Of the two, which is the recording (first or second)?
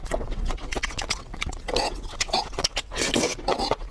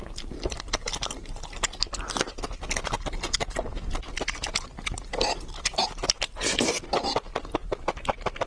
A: second